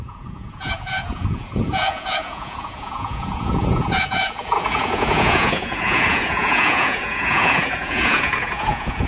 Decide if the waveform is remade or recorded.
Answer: remade